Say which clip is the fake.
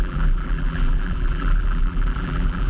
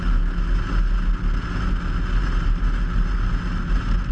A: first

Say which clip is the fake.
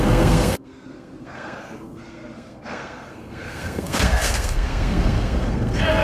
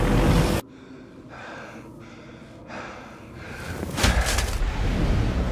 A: first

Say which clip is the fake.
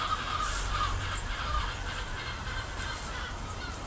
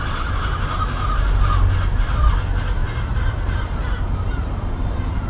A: first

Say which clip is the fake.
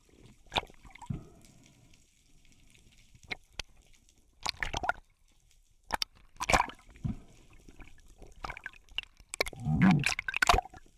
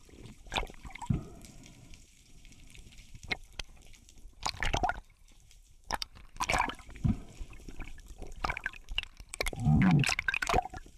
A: second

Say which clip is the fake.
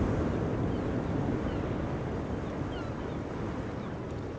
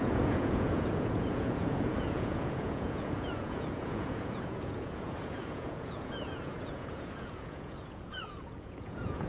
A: second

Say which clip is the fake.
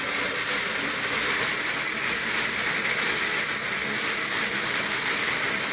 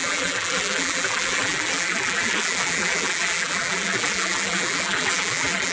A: second